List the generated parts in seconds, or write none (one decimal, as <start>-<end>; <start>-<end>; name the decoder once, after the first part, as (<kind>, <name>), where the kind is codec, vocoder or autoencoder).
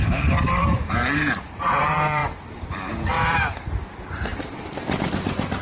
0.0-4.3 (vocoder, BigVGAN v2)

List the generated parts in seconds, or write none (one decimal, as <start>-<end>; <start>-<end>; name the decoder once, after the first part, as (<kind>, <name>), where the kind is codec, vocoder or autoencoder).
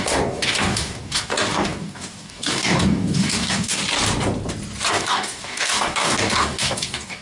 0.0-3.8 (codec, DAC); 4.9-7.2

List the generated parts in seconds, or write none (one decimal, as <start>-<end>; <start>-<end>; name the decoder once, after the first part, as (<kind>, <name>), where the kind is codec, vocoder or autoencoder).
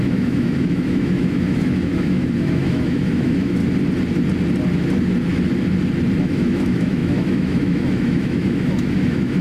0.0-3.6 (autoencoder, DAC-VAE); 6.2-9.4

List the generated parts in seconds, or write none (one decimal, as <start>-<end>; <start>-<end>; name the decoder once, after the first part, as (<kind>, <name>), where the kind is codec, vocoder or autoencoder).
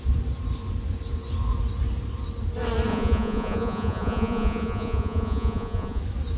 2.9-6.0 (vocoder, Vocos)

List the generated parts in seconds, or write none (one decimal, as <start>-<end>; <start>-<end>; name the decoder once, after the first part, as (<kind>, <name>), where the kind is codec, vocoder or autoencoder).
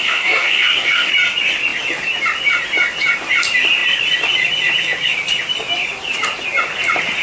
0.0-1.1 (codec, DAC)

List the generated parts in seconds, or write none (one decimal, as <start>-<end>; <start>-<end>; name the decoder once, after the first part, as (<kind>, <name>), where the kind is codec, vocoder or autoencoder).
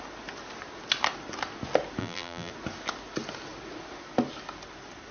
2.0-2.5 (vocoder, BigVGAN v2)